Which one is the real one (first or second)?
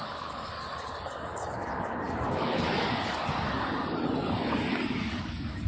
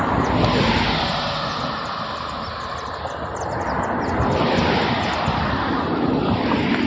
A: second